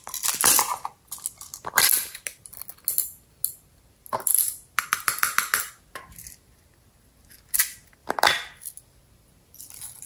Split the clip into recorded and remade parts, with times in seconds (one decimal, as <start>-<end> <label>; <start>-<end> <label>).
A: 0.0-10.1 recorded